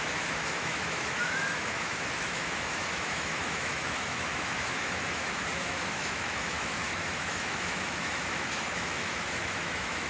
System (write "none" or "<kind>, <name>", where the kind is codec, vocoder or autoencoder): autoencoder, DAC-VAE